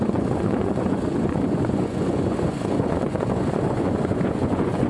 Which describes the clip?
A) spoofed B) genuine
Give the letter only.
A